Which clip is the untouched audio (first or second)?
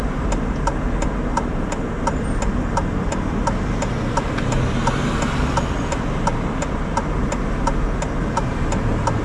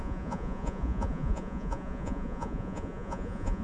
first